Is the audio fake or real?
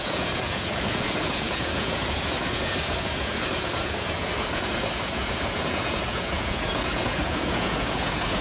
fake